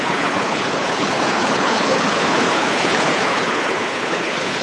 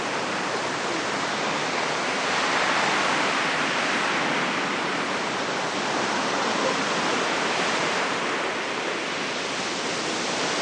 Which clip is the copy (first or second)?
first